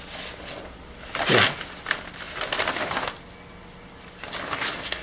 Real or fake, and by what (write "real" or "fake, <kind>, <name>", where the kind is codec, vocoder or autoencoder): real